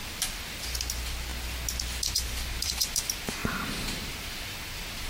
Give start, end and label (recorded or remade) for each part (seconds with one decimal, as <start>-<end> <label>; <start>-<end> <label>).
0.0-0.6 recorded; 0.6-1.3 remade; 1.3-1.8 recorded; 1.8-3.4 remade; 3.4-5.1 recorded